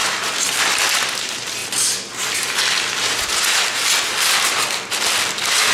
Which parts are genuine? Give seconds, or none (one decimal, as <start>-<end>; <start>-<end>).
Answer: 0.0-5.7